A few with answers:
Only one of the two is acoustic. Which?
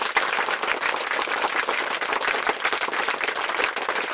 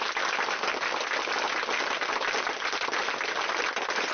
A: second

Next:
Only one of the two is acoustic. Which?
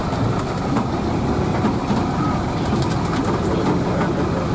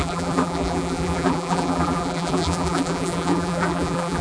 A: first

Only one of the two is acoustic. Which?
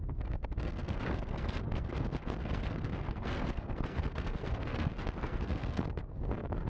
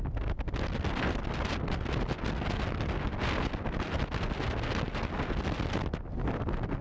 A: second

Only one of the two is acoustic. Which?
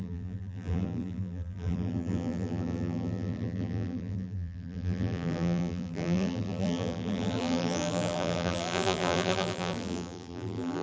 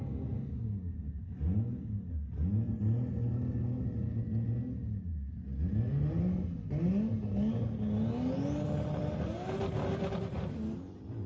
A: second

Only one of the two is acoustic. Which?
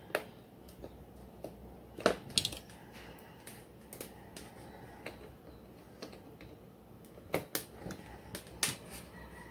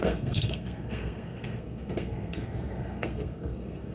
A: first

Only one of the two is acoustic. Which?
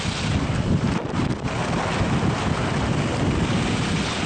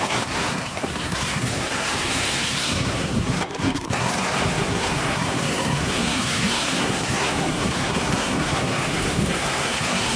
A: first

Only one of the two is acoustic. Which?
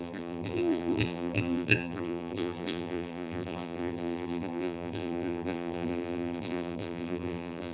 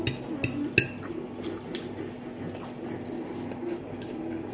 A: second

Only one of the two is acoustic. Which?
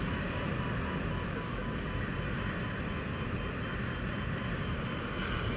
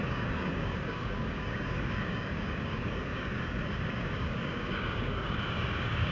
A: first